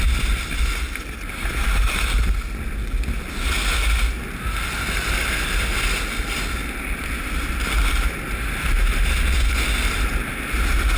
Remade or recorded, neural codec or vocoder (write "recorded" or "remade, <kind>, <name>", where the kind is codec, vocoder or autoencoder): recorded